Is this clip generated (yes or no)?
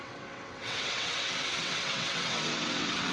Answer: yes